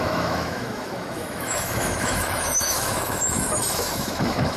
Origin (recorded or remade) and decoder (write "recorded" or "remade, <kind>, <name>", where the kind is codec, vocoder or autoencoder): remade, autoencoder, DAC-VAE